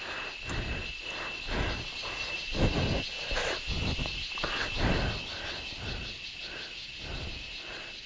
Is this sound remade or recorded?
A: recorded